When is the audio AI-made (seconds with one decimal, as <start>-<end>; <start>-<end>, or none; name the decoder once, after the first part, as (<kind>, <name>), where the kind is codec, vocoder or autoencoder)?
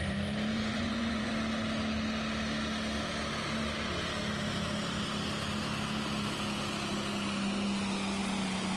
0.5-1.3 (vocoder, Vocos)